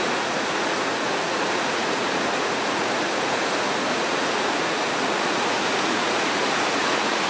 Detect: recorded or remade remade